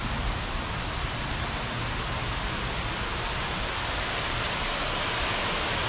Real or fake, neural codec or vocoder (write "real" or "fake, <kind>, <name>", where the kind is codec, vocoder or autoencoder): real